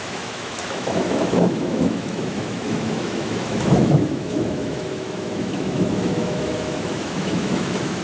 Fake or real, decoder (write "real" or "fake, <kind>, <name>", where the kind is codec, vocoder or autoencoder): fake, autoencoder, DAC-VAE